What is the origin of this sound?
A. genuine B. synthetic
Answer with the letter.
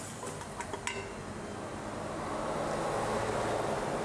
A